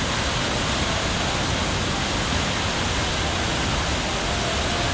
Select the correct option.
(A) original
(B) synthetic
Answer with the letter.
A